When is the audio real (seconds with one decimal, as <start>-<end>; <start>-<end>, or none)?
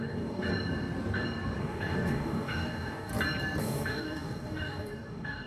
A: 0.5-1.6; 3.1-3.6